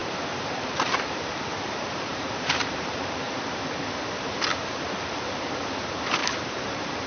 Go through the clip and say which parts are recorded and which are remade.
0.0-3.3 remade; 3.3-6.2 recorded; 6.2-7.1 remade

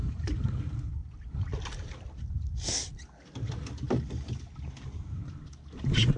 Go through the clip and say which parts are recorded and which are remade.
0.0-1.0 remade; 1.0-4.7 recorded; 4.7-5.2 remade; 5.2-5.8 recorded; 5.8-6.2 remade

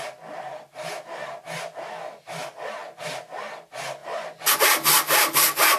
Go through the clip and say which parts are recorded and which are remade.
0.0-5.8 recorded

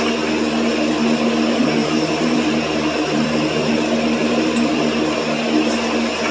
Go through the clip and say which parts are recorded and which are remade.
0.0-1.8 recorded; 1.8-3.7 remade; 3.7-4.2 recorded; 4.2-4.8 remade; 4.8-6.3 recorded

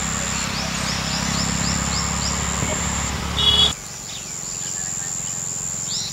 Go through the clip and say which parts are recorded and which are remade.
0.0-2.7 recorded; 2.7-3.2 remade; 3.2-6.1 recorded

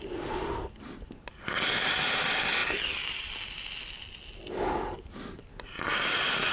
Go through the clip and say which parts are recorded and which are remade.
0.0-6.5 recorded

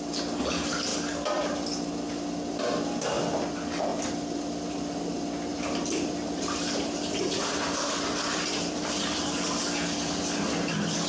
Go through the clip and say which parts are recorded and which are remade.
0.0-5.5 recorded; 5.5-9.6 remade; 9.6-11.1 recorded

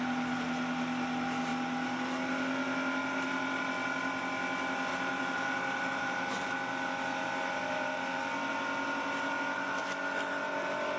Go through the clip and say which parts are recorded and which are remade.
0.0-4.9 recorded; 4.9-6.5 remade; 6.5-11.0 recorded